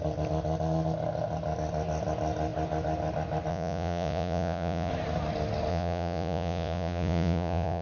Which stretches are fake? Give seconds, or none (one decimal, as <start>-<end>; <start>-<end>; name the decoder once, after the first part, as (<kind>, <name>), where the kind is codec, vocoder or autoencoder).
3.5-4.9 (vocoder, Vocos); 5.7-7.8